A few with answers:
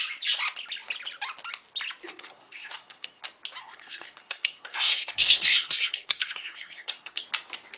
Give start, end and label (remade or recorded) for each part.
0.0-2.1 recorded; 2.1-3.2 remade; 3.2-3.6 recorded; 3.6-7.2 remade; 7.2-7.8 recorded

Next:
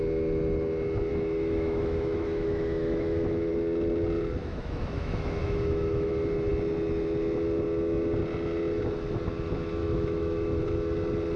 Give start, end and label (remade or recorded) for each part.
0.0-1.1 recorded; 1.1-3.5 remade; 3.5-4.4 recorded; 4.4-6.1 remade; 6.1-9.8 recorded; 9.8-10.6 remade; 10.6-11.4 recorded

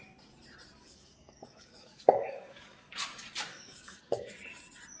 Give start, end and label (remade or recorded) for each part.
0.0-0.8 recorded; 0.8-2.9 remade; 2.9-3.5 recorded; 3.5-4.3 remade; 4.3-5.0 recorded

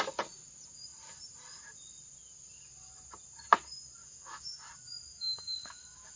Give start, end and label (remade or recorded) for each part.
0.0-4.0 recorded; 4.0-4.6 remade; 4.6-5.1 recorded; 5.1-6.2 remade

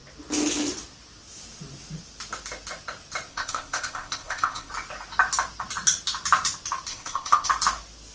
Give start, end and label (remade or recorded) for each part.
0.0-3.3 recorded; 3.3-4.7 remade; 4.7-6.9 recorded; 6.9-7.5 remade; 7.5-8.1 recorded